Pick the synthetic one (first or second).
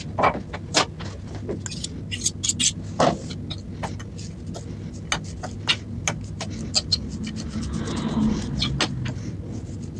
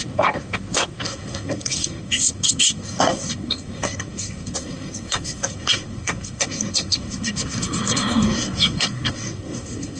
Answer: second